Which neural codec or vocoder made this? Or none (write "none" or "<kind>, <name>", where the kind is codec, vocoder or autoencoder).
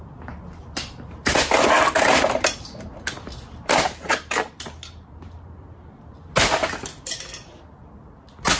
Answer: none